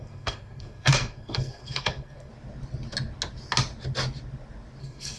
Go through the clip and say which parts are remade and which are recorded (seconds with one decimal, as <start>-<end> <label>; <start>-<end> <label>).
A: 0.0-2.3 remade; 2.3-4.8 recorded; 4.8-5.2 remade